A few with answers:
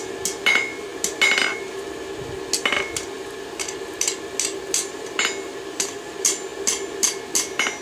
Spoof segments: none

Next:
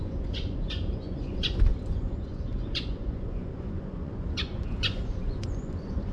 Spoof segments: 0.0-6.1 (vocoder, Vocos)